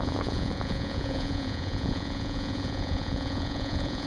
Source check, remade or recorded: remade